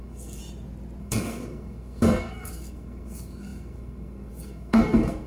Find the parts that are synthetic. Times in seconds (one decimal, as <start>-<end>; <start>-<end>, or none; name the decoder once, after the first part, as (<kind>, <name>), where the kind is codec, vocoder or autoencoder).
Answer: 0.0-0.4 (codec, SNAC); 1.0-5.3